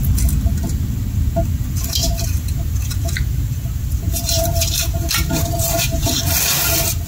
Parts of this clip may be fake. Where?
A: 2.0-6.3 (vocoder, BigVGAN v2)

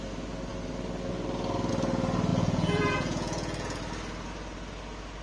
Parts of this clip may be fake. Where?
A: 2.3-3.8 (vocoder, Vocos)

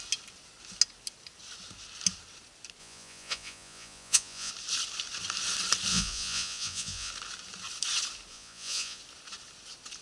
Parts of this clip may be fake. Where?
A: 2.8-4.5 (vocoder, Vocos); 5.9-7.1; 8.3-9.0

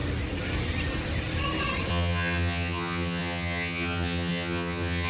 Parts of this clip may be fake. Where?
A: 1.9-5.1 (vocoder, HiFi-GAN)